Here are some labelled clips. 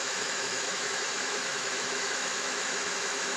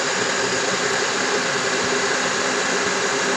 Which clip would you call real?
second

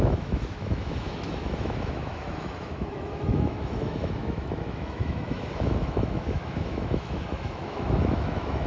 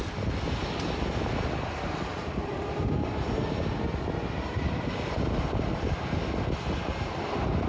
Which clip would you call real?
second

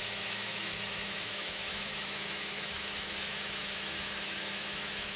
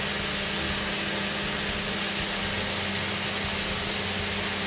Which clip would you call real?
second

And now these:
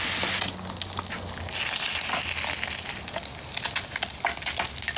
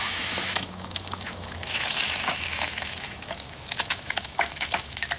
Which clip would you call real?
first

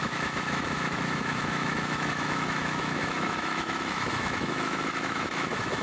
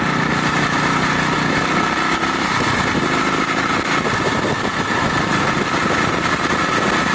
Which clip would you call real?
second